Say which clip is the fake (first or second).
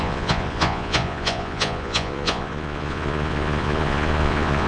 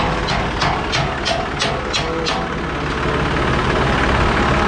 first